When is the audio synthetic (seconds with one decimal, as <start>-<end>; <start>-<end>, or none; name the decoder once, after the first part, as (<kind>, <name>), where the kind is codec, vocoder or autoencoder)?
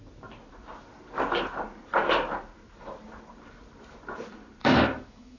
4.6-5.4 (autoencoder, DAC-VAE)